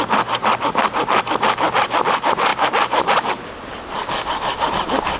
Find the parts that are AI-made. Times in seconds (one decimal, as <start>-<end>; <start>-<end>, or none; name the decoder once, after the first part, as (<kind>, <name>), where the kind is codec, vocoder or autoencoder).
none